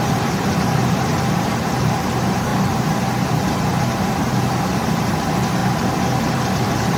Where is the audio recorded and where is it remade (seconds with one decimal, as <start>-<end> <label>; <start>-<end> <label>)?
0.0-2.5 remade; 2.5-4.8 recorded; 4.8-5.6 remade; 5.6-6.2 recorded; 6.2-7.0 remade

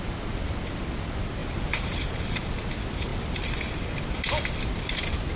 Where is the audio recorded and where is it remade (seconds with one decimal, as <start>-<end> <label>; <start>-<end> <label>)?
0.0-1.4 recorded; 1.4-2.5 remade; 2.5-3.1 recorded; 3.1-4.9 remade; 4.9-5.4 recorded

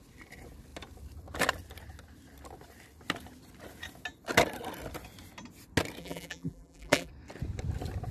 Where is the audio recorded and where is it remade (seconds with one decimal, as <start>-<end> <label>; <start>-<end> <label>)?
0.0-6.0 recorded; 6.0-7.1 remade; 7.1-8.1 recorded

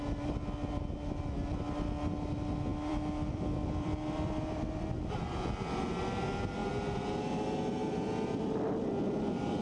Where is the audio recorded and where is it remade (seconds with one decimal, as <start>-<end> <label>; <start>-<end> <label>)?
0.0-2.7 recorded; 2.7-5.1 remade; 5.1-9.6 recorded